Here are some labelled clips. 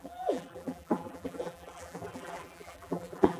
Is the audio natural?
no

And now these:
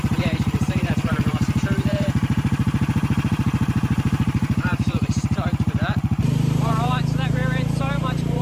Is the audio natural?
no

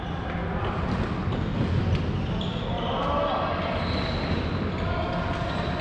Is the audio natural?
yes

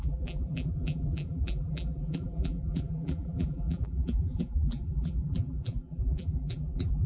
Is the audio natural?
no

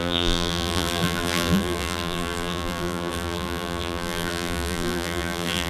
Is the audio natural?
no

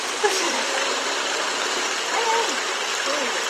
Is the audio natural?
no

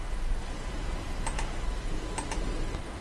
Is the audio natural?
yes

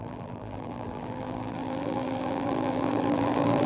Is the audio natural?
no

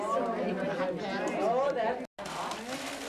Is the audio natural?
yes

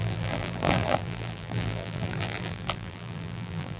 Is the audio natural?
no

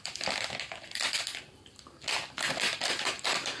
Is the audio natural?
yes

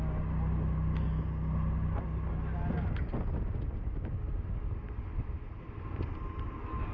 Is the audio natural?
yes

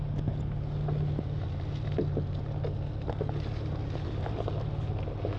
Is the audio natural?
yes